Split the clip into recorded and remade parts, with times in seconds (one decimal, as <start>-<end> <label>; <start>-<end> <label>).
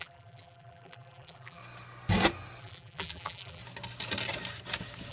0.0-1.6 remade; 1.6-2.6 recorded; 2.6-3.6 remade; 3.6-5.1 recorded